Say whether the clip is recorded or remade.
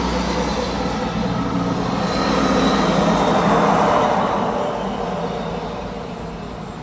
recorded